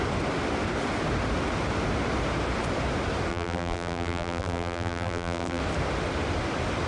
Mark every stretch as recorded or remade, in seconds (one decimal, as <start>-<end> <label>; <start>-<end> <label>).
0.0-3.3 recorded; 3.3-5.6 remade; 5.6-6.9 recorded